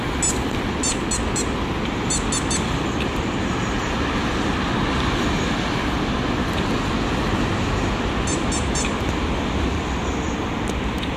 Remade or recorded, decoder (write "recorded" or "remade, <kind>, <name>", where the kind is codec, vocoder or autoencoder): recorded